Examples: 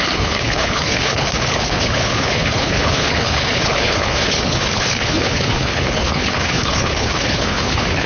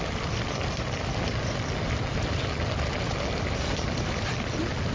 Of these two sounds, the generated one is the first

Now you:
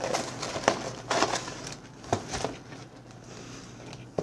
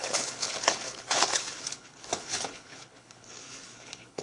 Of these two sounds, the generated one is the second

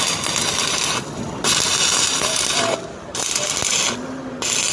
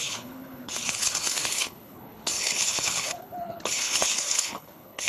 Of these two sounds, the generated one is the second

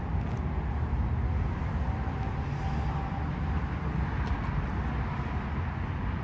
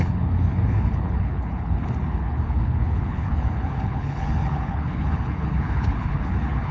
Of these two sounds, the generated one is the second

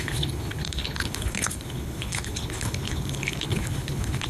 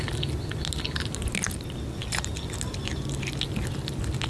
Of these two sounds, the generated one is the first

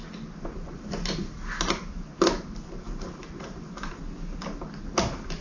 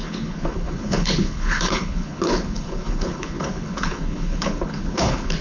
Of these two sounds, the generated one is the second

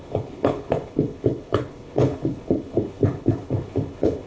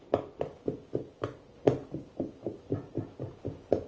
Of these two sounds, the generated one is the first